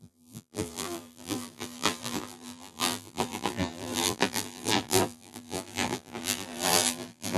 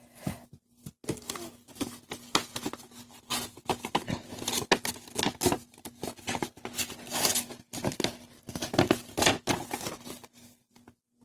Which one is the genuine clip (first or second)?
second